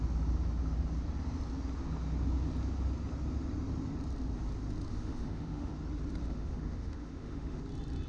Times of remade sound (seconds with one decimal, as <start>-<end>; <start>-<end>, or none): 4.9-5.7; 6.2-7.6